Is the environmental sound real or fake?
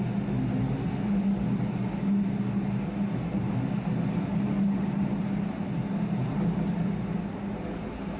real